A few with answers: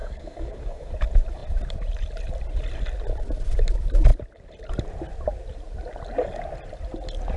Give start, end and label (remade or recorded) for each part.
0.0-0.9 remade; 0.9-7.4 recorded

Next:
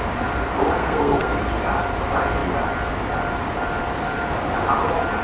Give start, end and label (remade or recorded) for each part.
0.0-0.8 recorded; 0.8-1.4 remade; 1.4-5.2 recorded

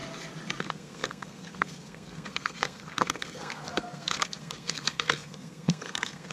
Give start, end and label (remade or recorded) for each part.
0.0-0.6 recorded; 0.6-6.3 remade

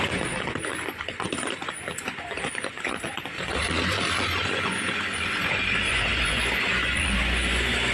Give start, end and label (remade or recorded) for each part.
0.0-7.9 remade

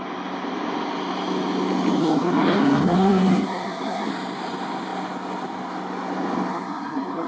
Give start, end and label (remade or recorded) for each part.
0.0-2.0 recorded; 2.0-4.1 remade; 4.1-6.5 recorded; 6.5-7.3 remade

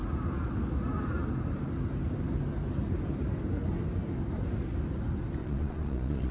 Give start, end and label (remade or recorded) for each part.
0.0-5.4 recorded; 5.4-6.3 remade

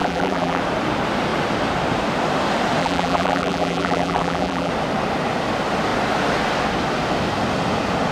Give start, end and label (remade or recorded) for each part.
0.0-0.6 remade; 0.6-2.8 recorded; 2.8-4.7 remade; 4.7-8.1 recorded

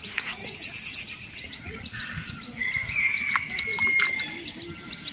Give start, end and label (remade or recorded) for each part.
0.0-2.3 remade; 2.3-2.8 recorded; 2.8-3.5 remade; 3.5-5.1 recorded